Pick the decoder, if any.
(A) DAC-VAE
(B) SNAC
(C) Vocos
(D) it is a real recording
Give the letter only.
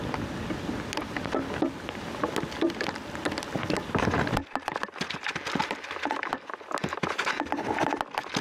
D